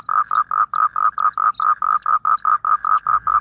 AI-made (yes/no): no